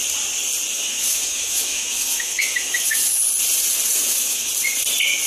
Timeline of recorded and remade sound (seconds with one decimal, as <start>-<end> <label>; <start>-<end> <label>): 0.0-0.7 recorded; 0.7-3.2 remade; 3.2-4.0 recorded; 4.0-4.5 remade; 4.5-5.3 recorded